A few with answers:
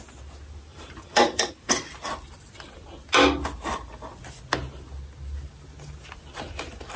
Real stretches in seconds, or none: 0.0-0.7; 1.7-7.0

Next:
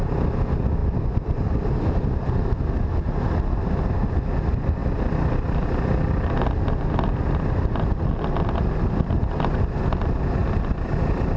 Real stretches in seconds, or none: 0.0-0.8; 1.8-10.4

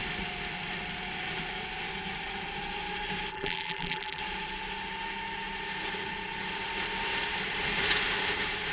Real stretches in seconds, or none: 0.0-3.3; 4.2-8.7

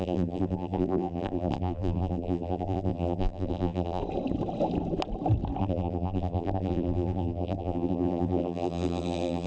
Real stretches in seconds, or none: 4.0-5.6

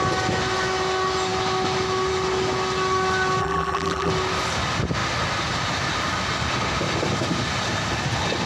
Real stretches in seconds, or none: 0.0-3.4; 4.1-8.5

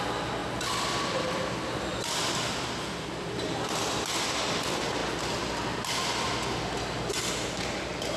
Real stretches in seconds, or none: 0.0-8.2

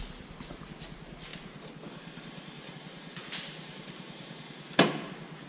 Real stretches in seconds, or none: 0.0-3.2; 4.4-5.5